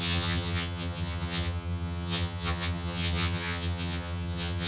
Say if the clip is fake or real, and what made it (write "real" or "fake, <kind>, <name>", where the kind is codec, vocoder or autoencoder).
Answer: fake, vocoder, HiFi-GAN